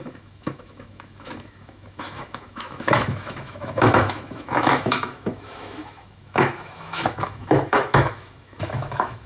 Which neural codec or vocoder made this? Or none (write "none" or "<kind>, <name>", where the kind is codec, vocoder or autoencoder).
autoencoder, DAC-VAE